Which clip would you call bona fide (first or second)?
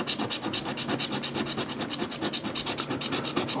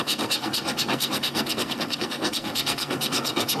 first